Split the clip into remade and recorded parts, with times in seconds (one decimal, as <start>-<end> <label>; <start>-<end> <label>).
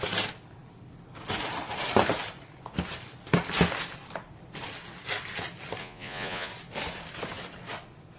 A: 0.0-5.8 recorded; 5.8-6.5 remade; 6.5-8.2 recorded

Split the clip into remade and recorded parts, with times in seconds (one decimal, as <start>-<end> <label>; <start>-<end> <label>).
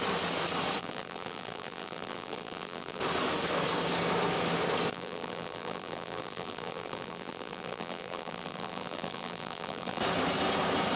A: 0.0-0.8 recorded; 0.8-3.0 remade; 3.0-4.9 recorded; 4.9-10.0 remade; 10.0-11.0 recorded